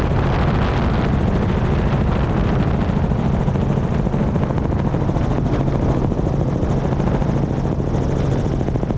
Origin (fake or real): real